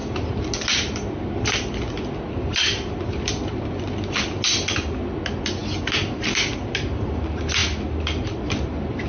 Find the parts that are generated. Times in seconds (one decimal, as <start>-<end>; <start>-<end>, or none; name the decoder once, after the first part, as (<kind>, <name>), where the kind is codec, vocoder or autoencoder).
none